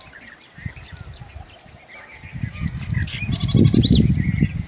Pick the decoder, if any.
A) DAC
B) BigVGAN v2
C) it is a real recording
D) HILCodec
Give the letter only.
C